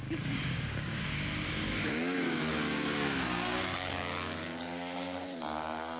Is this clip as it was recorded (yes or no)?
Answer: no